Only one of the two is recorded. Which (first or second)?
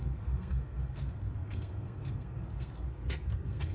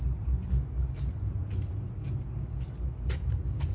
second